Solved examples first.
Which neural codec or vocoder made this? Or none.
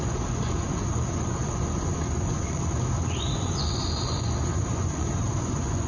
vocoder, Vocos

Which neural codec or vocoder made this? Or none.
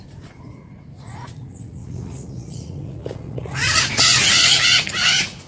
vocoder, Vocos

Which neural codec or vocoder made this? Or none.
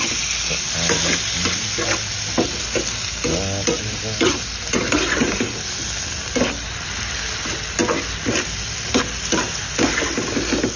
none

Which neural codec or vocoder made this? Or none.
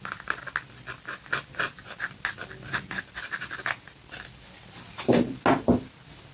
none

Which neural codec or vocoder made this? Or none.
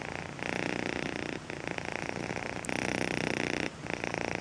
none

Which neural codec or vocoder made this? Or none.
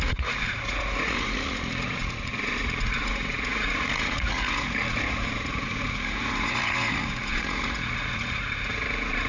vocoder, Vocos